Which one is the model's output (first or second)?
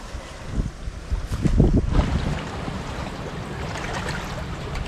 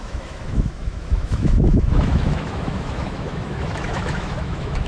second